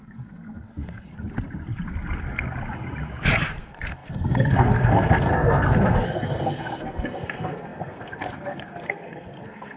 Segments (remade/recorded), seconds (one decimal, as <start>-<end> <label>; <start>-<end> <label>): 0.0-1.1 remade; 1.1-3.6 recorded; 3.6-9.8 remade